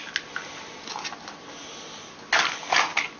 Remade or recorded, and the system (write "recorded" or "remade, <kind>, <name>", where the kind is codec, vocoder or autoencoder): recorded